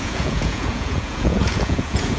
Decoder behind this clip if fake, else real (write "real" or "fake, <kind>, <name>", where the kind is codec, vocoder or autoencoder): fake, vocoder, Vocos